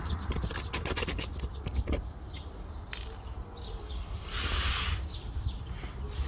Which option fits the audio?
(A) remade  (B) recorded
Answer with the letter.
B